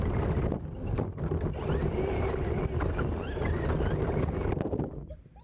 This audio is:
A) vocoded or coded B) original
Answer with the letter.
B